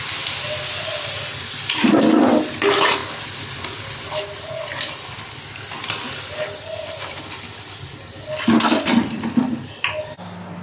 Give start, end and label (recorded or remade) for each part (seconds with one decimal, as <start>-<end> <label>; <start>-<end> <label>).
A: 0.0-10.6 recorded